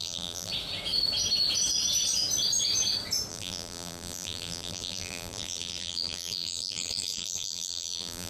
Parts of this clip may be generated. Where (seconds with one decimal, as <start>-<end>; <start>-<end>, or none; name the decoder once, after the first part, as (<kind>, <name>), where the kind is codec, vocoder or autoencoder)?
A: 0.0-0.5 (vocoder, BigVGAN v2); 3.3-8.3